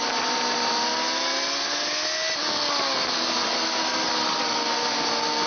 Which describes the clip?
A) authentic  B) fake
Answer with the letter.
A